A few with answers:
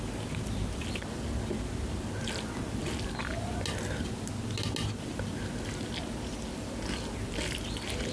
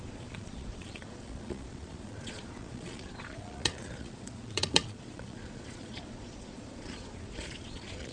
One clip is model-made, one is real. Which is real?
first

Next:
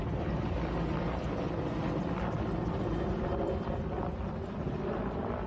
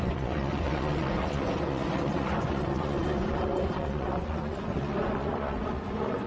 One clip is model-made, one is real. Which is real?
first